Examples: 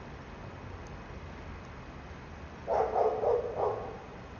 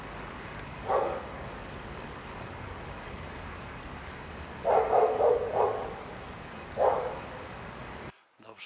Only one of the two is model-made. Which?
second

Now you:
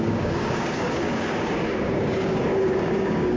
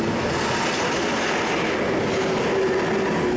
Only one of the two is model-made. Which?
first